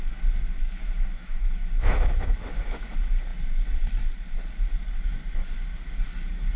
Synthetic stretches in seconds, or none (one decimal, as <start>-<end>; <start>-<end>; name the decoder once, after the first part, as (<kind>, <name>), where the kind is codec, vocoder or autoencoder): 0.6-2.9 (autoencoder, DAC-VAE)